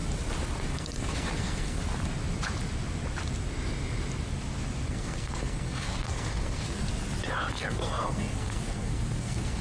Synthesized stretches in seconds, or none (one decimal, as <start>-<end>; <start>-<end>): 0.7-1.8; 4.9-6.9; 7.5-9.6